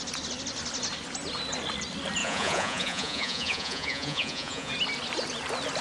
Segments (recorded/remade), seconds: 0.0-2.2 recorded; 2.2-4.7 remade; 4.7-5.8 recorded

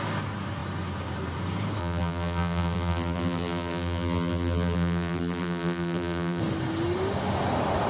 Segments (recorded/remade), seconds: 0.0-1.8 recorded; 1.8-6.4 remade; 6.4-7.9 recorded

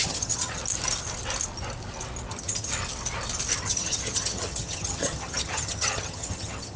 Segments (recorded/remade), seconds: 0.0-0.6 remade; 0.6-2.3 recorded; 2.3-2.7 remade; 2.7-3.6 recorded; 3.6-6.8 remade